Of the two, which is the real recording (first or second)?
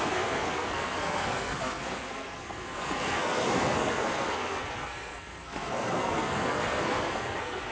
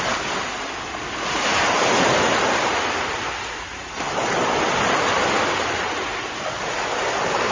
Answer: second